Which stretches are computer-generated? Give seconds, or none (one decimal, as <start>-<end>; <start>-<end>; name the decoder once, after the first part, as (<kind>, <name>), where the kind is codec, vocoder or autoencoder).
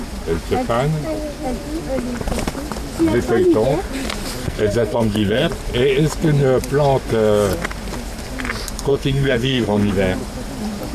4.4-5.5 (codec, SNAC); 8.9-9.9